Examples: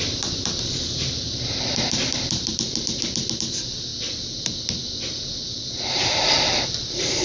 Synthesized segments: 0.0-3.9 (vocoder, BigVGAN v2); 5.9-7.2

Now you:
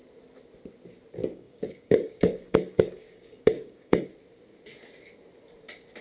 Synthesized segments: 1.2-4.1 (codec, DAC)